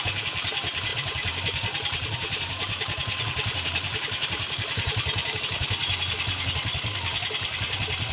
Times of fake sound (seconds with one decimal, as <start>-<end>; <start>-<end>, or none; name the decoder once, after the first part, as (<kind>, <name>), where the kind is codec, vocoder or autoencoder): 0.9-5.4 (vocoder, BigVGAN v2)